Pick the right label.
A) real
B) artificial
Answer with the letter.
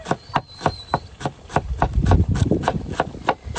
A